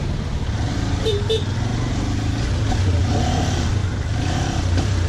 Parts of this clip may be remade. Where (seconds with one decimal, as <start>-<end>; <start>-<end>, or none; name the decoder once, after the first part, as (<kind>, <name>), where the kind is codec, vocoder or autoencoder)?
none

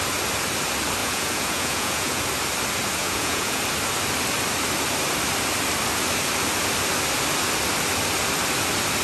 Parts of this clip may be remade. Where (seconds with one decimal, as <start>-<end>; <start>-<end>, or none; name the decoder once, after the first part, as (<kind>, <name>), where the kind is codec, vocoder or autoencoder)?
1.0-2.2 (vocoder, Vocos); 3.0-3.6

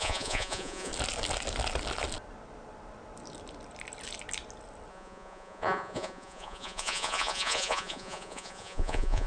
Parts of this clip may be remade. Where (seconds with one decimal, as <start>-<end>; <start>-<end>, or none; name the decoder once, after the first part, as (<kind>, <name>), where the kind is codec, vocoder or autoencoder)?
0.0-0.9 (vocoder, Vocos); 4.9-9.3

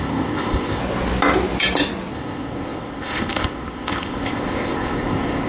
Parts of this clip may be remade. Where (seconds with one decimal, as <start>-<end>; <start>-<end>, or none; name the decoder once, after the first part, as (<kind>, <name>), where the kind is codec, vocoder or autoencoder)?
0.0-0.8 (codec, ZipCodec); 2.1-5.5

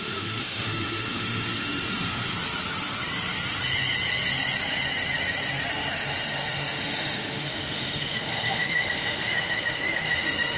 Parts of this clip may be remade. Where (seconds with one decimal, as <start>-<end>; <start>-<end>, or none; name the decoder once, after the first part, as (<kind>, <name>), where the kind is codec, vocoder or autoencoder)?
0.0-2.3 (autoencoder, DAC-VAE); 5.7-10.6